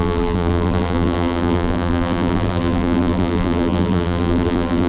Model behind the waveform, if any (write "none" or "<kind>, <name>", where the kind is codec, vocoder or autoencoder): vocoder, BigVGAN v2